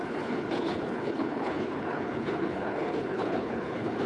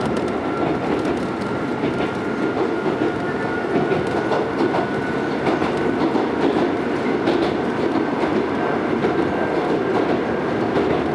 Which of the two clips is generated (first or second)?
first